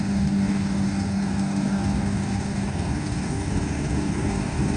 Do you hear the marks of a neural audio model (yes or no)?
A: yes